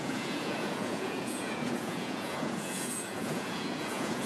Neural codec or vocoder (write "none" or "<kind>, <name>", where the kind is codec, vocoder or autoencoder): vocoder, Vocos